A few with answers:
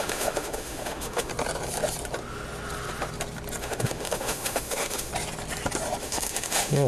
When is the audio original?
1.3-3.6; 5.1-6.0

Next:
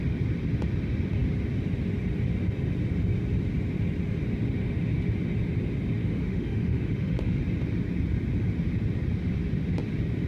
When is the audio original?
0.0-6.0; 7.4-10.3

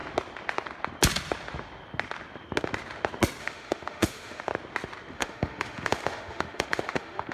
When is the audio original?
0.0-3.4; 4.5-5.1

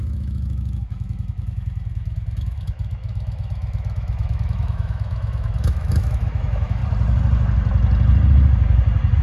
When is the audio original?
6.8-9.2

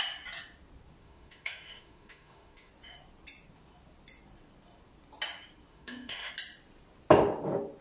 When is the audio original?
0.0-1.0; 2.7-5.7; 6.3-7.8

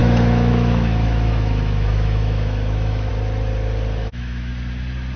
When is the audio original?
3.1-4.0; 4.5-5.2

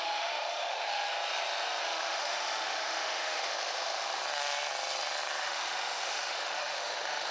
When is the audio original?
1.1-1.8; 4.2-5.4

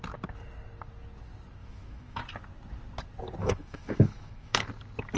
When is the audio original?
0.0-1.6; 2.2-3.4; 4.7-5.2